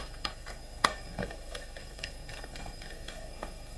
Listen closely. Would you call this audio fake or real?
fake